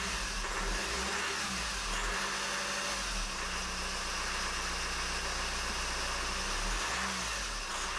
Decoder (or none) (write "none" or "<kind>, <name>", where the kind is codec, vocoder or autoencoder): none